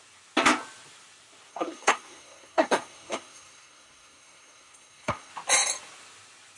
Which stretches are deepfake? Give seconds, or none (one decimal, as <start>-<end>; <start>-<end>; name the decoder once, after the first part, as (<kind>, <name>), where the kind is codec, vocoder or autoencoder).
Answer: 1.5-5.3 (codec, SNAC)